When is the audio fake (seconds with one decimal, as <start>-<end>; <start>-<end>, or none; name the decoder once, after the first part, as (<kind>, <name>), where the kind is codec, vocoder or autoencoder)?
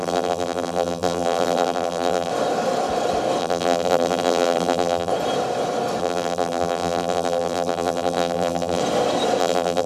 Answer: 0.0-2.3 (vocoder, BigVGAN v2); 3.4-5.1; 6.0-8.8; 9.4-9.9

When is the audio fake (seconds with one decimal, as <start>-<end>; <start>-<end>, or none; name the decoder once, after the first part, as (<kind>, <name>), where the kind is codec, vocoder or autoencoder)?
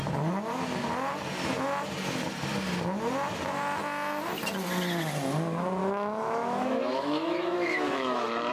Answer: 5.8-8.5 (autoencoder, DAC-VAE)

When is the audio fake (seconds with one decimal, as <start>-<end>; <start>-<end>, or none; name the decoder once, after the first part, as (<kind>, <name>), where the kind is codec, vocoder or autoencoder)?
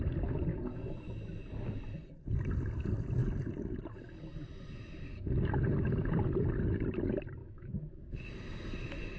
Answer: 0.5-1.0 (autoencoder, DAC-VAE); 7.4-8.0